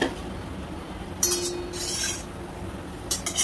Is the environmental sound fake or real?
real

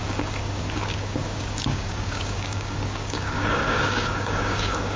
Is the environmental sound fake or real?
fake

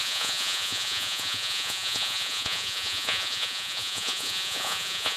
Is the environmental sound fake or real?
fake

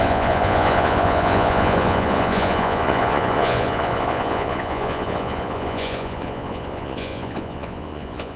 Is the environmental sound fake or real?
fake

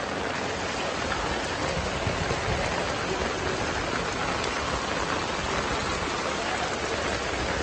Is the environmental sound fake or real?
real